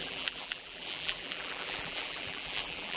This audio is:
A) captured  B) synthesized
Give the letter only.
B